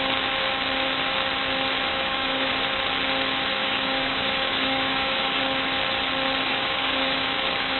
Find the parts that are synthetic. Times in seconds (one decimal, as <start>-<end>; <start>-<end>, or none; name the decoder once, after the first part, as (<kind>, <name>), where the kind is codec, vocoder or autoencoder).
1.9-2.5 (codec, DAC); 3.6-5.4; 6.5-7.8